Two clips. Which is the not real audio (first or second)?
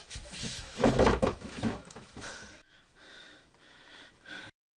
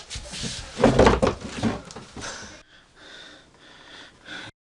first